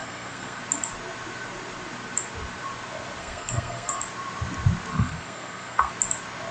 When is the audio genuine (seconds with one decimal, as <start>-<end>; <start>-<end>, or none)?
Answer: 0.6-3.2; 4.0-4.9; 5.9-6.5